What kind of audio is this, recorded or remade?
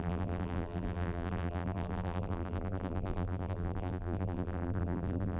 remade